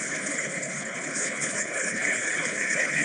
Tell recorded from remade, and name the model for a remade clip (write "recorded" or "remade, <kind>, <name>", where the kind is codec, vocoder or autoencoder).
remade, codec, HILCodec